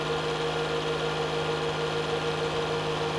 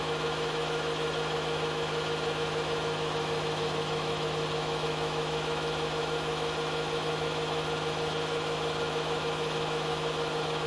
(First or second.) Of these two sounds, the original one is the first